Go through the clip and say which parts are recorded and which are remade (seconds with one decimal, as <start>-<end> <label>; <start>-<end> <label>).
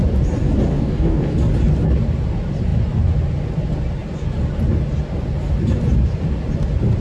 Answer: 0.0-0.7 recorded; 0.7-1.3 remade; 1.3-7.0 recorded